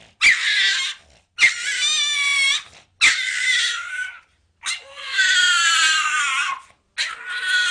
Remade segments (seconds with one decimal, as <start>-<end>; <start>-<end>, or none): none